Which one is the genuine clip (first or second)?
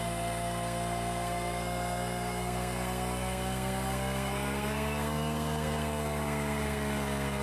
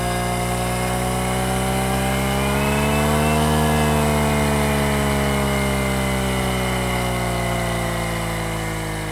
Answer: second